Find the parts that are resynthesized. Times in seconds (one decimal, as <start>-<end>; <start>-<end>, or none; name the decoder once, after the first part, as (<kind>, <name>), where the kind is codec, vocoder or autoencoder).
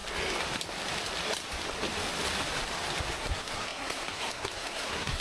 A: 3.1-5.2 (codec, SNAC)